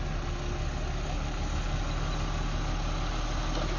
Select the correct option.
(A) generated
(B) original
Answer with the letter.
B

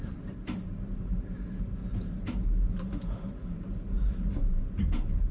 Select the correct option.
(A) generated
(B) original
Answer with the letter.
A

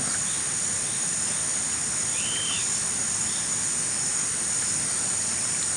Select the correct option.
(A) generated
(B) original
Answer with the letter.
B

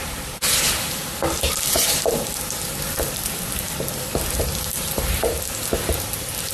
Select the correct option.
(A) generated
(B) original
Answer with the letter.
A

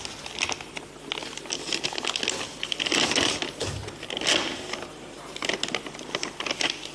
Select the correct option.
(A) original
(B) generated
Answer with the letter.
A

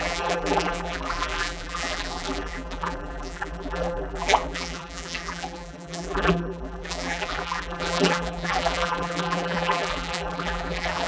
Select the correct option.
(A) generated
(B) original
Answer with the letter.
A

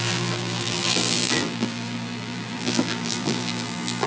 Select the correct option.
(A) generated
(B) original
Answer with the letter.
A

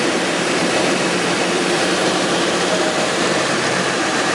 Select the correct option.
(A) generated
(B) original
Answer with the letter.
A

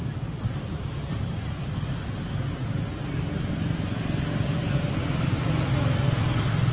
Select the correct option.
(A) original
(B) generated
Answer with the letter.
A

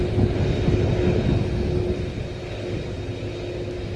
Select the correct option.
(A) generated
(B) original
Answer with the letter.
B